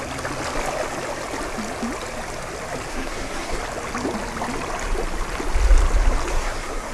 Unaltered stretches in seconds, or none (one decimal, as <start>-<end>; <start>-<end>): 0.0-2.9; 3.6-6.3